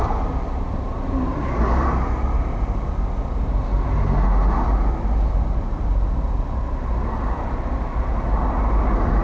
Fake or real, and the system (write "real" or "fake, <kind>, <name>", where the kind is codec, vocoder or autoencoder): real